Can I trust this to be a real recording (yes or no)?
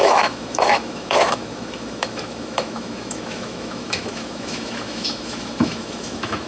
no